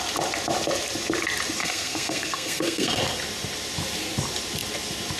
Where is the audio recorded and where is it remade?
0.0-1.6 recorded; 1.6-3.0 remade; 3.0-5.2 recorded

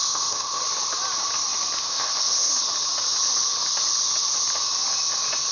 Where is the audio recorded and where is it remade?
0.0-0.6 remade; 0.6-1.8 recorded; 1.8-2.5 remade; 2.5-5.5 recorded

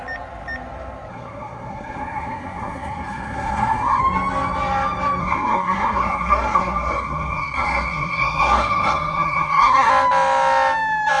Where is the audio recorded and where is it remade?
0.0-1.1 recorded; 1.1-4.0 remade; 4.0-5.2 recorded; 5.2-9.9 remade; 9.9-11.2 recorded

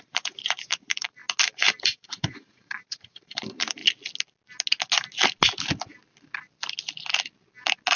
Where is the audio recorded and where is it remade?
0.0-1.2 remade; 1.2-1.8 recorded; 1.8-3.8 remade; 3.8-8.0 recorded

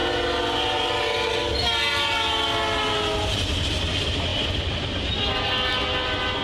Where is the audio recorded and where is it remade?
0.0-6.4 recorded

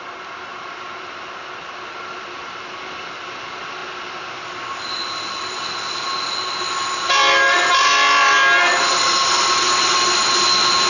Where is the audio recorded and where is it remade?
0.0-10.9 recorded

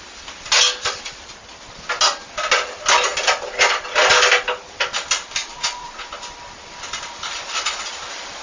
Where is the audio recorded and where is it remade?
0.0-5.4 recorded; 5.4-6.1 remade; 6.1-8.4 recorded

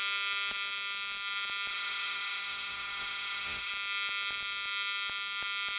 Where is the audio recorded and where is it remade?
0.0-1.7 recorded; 1.7-3.7 remade; 3.7-5.8 recorded